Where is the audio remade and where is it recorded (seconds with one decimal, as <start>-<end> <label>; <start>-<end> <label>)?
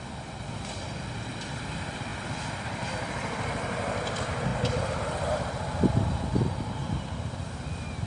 0.0-8.1 recorded